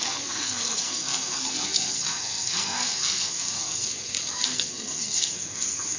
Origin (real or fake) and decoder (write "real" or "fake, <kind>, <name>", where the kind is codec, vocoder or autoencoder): fake, codec, SNAC